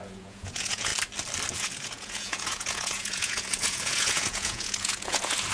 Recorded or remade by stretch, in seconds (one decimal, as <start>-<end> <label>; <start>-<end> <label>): 0.0-0.9 remade; 0.9-1.5 recorded; 1.5-5.5 remade